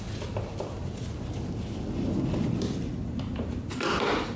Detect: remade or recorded recorded